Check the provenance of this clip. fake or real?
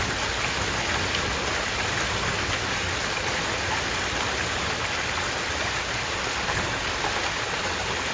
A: real